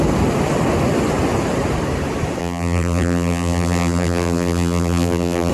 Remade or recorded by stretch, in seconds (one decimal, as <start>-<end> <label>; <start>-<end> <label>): 0.0-2.4 recorded; 2.4-5.5 remade